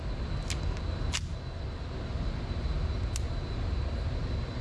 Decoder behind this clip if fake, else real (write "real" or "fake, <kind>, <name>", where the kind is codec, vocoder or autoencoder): real